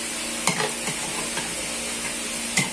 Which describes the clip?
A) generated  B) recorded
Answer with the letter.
B